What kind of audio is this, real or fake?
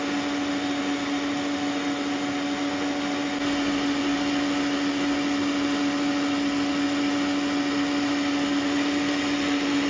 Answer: real